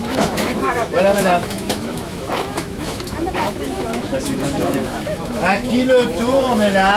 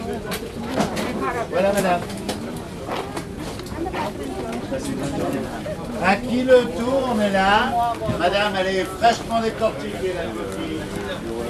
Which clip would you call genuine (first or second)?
second